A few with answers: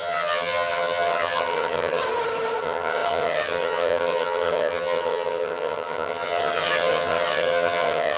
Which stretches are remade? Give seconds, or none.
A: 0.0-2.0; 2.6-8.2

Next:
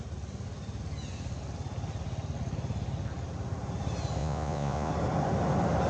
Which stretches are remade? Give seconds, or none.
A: 4.2-4.9